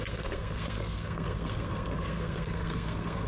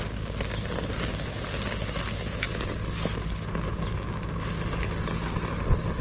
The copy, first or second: first